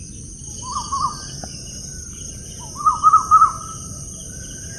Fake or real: real